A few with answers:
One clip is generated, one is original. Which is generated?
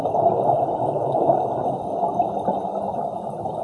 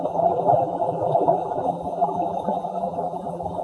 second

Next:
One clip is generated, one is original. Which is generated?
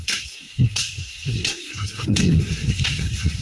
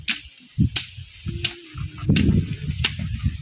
first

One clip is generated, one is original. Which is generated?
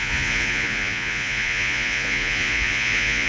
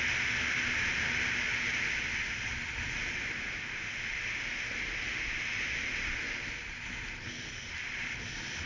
first